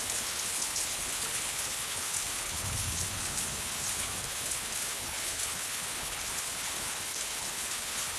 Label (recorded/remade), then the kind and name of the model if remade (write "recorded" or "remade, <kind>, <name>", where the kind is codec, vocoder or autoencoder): remade, codec, HILCodec